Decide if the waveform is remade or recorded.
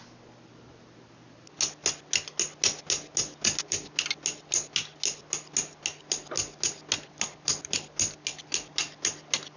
recorded